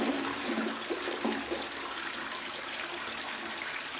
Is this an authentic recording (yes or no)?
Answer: no